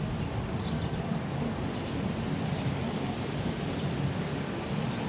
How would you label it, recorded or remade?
recorded